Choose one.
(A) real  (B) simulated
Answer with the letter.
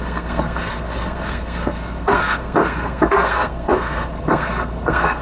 B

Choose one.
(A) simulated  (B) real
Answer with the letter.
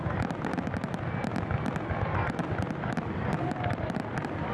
B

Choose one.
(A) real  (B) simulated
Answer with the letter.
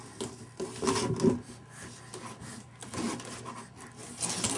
A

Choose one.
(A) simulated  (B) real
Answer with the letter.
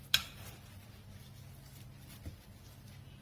B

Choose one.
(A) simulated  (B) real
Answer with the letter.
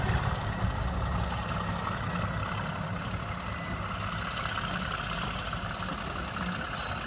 B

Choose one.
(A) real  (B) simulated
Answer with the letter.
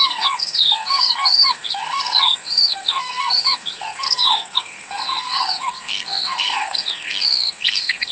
B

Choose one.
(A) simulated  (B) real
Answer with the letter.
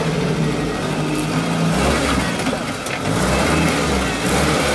B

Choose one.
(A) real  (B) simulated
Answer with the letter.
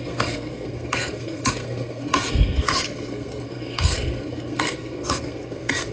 B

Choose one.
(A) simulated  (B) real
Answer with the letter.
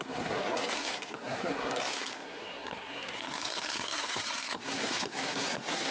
A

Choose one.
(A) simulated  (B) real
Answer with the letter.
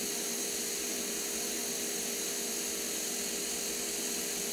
B